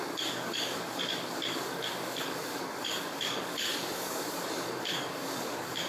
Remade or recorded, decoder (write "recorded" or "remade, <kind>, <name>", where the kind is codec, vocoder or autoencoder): remade, codec, DAC